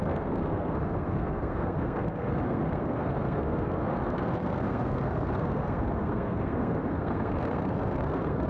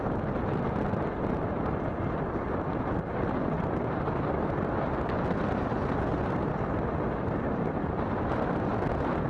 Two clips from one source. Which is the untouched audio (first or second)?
second